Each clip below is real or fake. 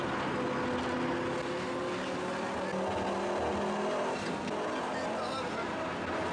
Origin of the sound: real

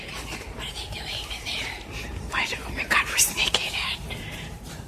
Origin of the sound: fake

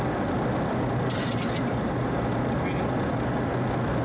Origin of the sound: real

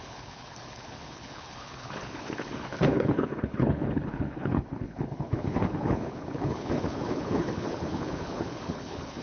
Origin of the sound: fake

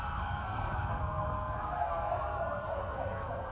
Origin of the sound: fake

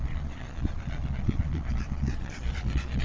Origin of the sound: fake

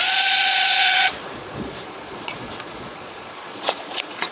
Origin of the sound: fake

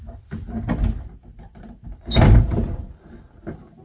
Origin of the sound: fake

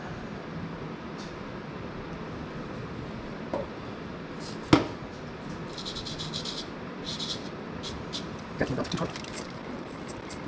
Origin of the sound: real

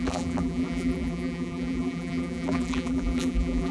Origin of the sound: fake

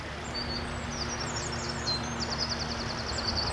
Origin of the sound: real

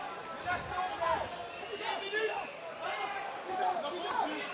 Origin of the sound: real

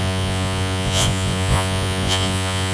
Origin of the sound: fake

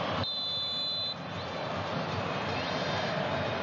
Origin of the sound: real